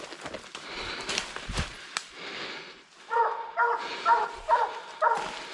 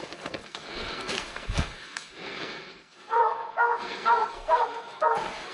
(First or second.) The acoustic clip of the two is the first